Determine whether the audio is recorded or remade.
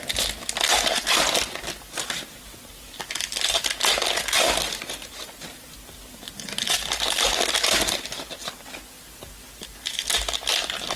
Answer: recorded